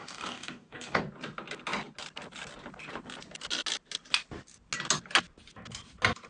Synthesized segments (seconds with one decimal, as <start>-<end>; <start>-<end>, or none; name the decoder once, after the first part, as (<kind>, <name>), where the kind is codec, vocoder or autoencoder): 0.0-1.0 (codec, DAC)